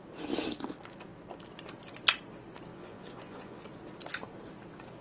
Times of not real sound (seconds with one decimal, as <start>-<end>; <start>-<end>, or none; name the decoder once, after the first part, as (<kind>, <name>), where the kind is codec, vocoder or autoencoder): 2.7-3.6 (vocoder, Vocos)